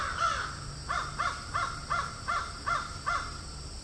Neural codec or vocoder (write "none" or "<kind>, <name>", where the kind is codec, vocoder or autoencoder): none